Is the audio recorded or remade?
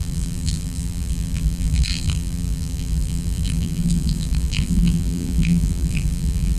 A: remade